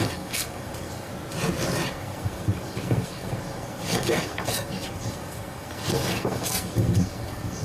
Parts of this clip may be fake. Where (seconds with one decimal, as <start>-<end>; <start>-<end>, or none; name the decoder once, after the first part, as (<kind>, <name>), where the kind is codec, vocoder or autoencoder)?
0.0-1.1 (codec, SNAC); 1.9-7.6